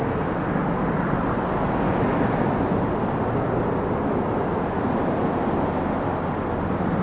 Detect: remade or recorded recorded